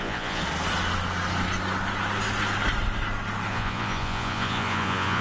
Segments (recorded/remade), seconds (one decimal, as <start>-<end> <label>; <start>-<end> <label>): 0.0-0.4 remade; 0.4-3.5 recorded; 3.5-5.2 remade